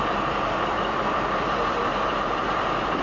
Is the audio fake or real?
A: fake